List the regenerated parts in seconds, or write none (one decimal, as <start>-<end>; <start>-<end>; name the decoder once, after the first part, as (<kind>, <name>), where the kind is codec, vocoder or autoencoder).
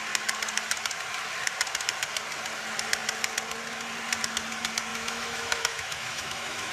4.9-6.7 (autoencoder, DAC-VAE)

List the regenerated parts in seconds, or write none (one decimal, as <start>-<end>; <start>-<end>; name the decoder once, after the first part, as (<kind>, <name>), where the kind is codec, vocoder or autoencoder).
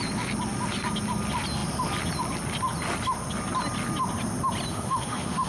4.7-5.5 (autoencoder, DAC-VAE)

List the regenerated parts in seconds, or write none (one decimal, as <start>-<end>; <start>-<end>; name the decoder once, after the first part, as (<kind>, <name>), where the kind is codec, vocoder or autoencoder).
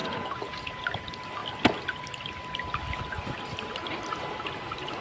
0.0-0.8 (vocoder, Vocos)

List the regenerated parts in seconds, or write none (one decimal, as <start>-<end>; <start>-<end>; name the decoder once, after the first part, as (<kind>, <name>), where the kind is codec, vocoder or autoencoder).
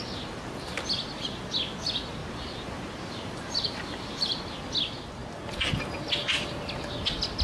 2.2-4.4 (vocoder, BigVGAN v2); 5.2-5.7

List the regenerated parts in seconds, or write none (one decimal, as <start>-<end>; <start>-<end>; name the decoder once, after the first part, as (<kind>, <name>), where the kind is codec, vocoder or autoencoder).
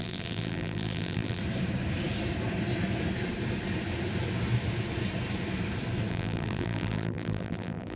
0.0-1.4 (vocoder, BigVGAN v2); 6.1-8.0